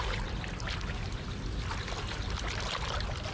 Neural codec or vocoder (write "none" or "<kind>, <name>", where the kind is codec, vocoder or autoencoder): none